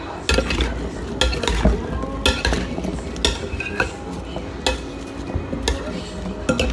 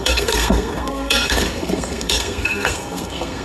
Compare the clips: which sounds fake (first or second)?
second